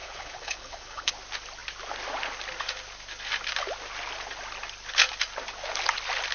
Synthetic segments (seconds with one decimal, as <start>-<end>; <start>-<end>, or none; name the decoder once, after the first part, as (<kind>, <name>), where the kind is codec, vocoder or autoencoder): 0.0-1.1 (codec, HILCodec)